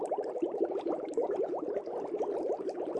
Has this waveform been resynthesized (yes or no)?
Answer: yes